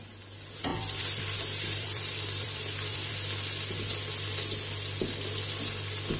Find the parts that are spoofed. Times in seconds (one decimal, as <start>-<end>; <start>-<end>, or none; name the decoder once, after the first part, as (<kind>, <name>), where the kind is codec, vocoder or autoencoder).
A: 0.7-3.1 (vocoder, BigVGAN v2)